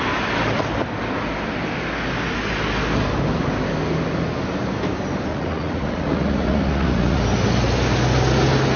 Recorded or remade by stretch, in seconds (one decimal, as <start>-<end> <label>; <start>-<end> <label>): 0.0-5.3 recorded; 5.3-7.2 remade; 7.2-8.8 recorded